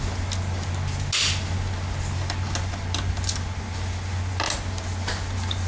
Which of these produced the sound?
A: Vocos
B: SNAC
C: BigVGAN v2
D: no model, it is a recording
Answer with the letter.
D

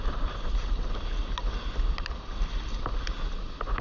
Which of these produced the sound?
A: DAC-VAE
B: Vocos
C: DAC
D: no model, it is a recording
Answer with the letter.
D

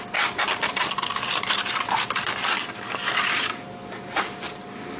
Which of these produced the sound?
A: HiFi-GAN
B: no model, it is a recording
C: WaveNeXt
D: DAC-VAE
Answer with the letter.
B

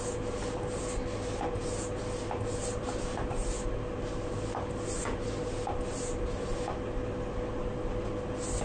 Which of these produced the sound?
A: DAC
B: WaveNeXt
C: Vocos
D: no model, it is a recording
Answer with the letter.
D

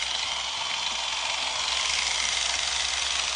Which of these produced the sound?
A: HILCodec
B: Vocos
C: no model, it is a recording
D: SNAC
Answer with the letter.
C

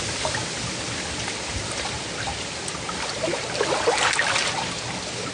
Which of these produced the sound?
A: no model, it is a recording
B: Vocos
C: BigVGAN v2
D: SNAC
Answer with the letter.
A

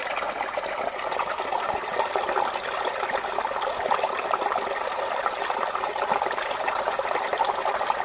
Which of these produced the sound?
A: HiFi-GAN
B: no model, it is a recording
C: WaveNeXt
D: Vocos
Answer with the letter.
B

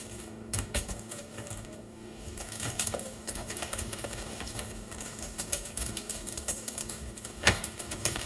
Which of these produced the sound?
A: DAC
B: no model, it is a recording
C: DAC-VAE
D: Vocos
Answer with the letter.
A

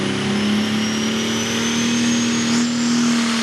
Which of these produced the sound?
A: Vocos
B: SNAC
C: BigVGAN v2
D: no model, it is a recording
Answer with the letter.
D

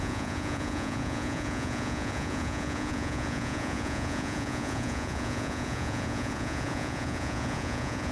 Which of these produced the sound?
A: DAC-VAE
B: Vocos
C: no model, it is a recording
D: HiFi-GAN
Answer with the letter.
B